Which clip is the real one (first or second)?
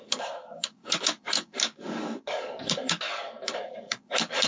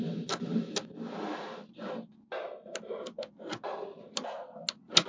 second